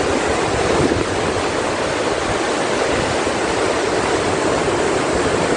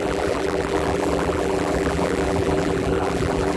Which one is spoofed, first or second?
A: second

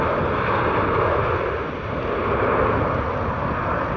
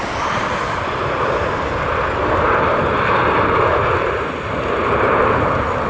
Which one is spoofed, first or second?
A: second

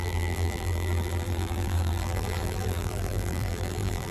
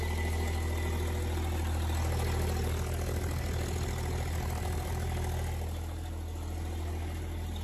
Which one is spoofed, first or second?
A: first